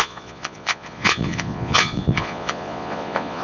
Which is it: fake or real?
fake